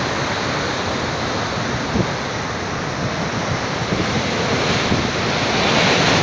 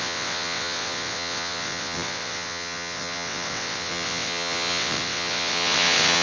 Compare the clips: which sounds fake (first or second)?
second